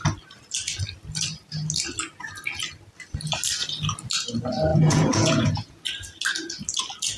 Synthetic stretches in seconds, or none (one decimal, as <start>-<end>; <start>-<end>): 4.7-5.8